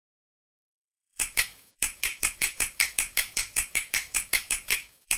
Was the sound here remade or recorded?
remade